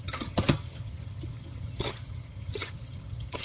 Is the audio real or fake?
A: fake